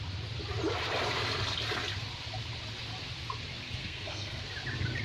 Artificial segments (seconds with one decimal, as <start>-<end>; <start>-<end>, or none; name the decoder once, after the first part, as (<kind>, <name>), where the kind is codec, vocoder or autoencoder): 3.8-4.4 (codec, SNAC)